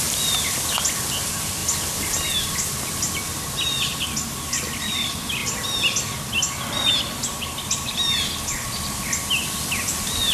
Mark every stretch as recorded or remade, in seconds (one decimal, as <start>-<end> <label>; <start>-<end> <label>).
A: 0.0-10.3 recorded